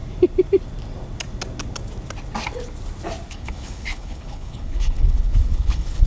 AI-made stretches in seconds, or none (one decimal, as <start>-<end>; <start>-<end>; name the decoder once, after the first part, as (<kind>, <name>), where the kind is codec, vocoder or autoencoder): 3.3-6.1 (codec, HILCodec)